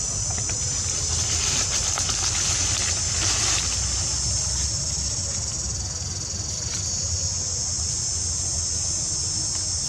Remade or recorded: recorded